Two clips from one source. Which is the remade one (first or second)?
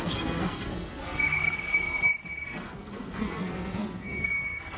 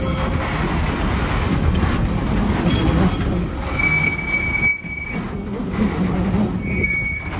first